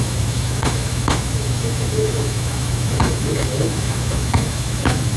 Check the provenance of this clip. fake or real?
fake